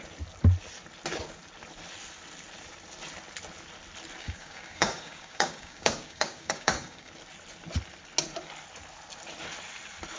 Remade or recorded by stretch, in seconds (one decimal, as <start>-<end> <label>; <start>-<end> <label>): 0.0-4.2 recorded; 4.2-7.1 remade; 7.1-10.2 recorded